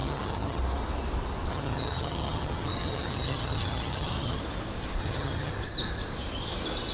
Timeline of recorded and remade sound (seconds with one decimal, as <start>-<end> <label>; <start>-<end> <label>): 0.0-0.6 remade; 0.6-1.5 recorded; 1.5-4.4 remade; 4.4-5.0 recorded; 5.0-5.5 remade; 5.5-6.9 recorded